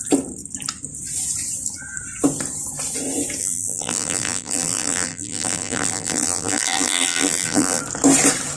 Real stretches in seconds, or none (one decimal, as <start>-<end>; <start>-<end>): 0.0-3.4; 7.8-8.6